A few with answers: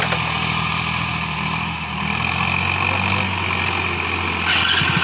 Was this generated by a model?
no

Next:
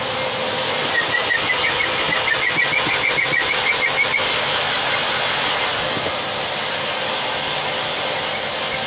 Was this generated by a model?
no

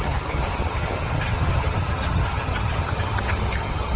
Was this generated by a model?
yes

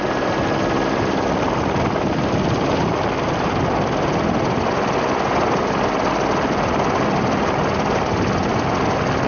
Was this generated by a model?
no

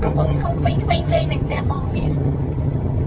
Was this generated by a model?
yes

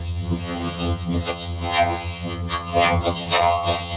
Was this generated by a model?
yes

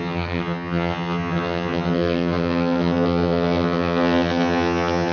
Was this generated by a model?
yes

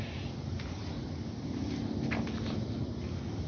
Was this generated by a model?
no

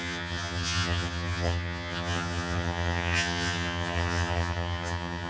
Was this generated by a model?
yes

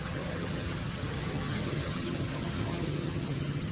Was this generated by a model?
yes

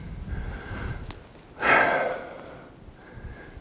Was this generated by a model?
no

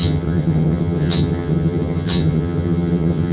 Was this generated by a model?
yes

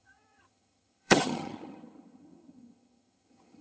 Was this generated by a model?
yes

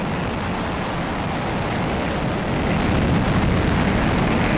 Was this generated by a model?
no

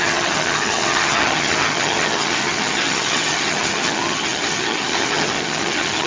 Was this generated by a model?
yes